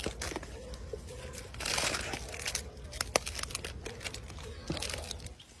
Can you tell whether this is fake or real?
real